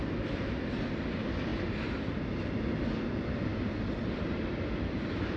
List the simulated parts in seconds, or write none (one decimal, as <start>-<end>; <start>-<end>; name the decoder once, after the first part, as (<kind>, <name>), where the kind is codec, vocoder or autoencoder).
1.5-2.5 (vocoder, BigVGAN v2)